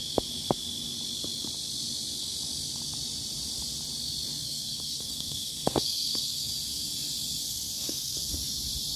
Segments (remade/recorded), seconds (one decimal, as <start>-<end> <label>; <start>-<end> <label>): 0.0-4.4 recorded; 4.4-6.5 remade; 6.5-7.4 recorded; 7.4-8.3 remade; 8.3-9.0 recorded